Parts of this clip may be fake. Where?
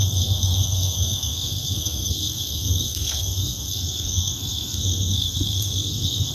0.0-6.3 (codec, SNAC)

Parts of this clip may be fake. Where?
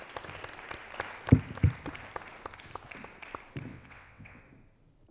3.7-4.4 (vocoder, WaveNeXt)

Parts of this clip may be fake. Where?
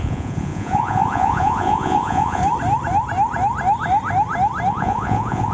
0.0-2.4 (vocoder, Vocos); 4.7-5.5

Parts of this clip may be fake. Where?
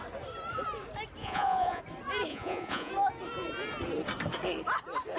1.2-1.8 (vocoder, Vocos); 2.3-2.9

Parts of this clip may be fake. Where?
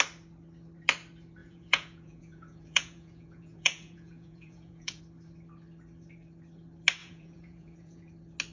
1.4-5.0 (vocoder, Vocos); 7.0-8.1